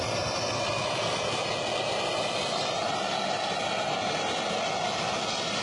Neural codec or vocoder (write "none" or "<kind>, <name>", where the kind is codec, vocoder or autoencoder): none